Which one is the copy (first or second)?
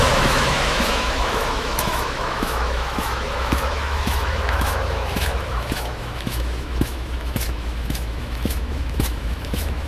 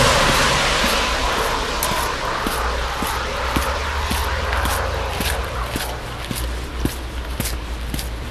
first